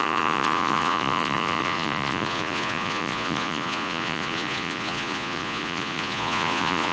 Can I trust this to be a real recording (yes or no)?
no